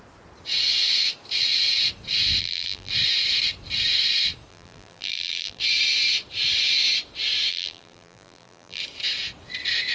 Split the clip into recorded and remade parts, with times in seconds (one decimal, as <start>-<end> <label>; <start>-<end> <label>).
0.0-2.4 recorded; 2.4-2.9 remade; 2.9-4.5 recorded; 4.5-5.6 remade; 5.6-7.5 recorded; 7.5-8.8 remade; 8.8-9.9 recorded